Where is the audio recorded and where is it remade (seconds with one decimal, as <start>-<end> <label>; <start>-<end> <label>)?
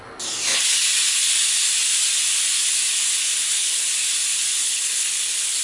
0.0-3.3 recorded; 3.3-3.9 remade; 3.9-4.6 recorded; 4.6-5.6 remade